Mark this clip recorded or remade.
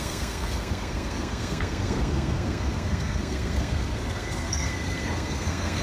remade